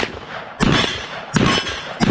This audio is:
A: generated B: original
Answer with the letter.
B